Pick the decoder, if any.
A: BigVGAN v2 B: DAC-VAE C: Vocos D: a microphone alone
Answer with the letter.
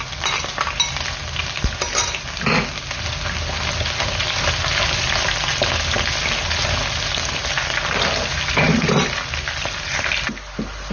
D